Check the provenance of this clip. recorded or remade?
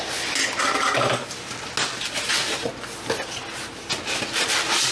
recorded